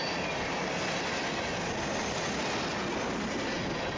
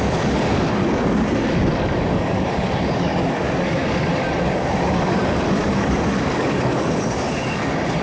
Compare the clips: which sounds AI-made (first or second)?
second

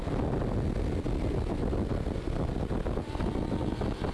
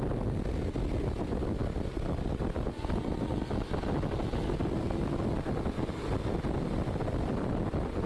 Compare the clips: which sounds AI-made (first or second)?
second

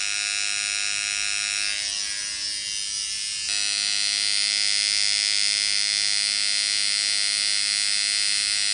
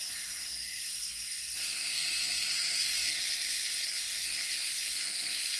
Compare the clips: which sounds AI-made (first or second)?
second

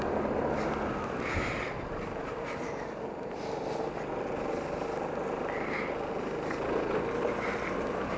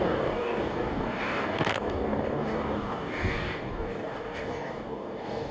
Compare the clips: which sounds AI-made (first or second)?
second